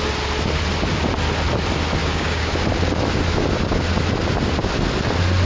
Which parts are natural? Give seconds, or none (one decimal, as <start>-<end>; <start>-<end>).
0.0-2.0; 2.5-5.5